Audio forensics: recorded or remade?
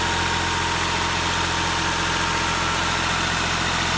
recorded